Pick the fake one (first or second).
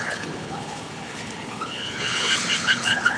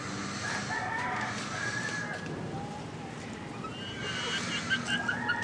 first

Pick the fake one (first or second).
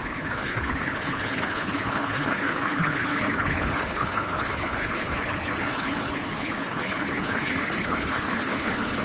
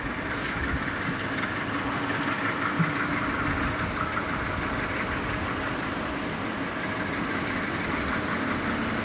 first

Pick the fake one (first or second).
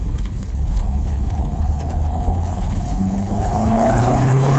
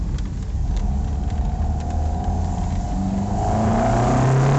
first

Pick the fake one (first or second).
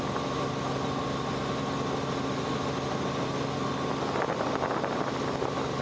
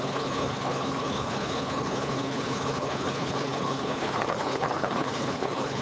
second